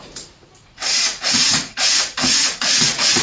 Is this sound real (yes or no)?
no